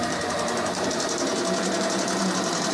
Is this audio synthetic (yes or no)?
yes